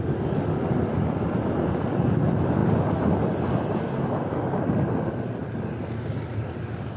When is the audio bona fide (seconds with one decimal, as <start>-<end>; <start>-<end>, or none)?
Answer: 0.0-7.0